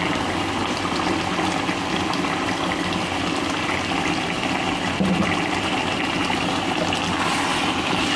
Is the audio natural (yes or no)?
yes